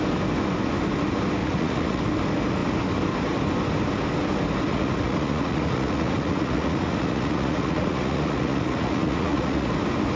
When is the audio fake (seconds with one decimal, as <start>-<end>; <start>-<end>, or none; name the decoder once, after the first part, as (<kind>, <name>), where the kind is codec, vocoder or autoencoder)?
1.4-2.0 (vocoder, Vocos); 4.7-9.7